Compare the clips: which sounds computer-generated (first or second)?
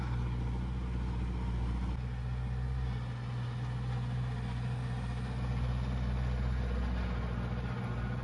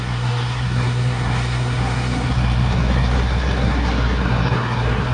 second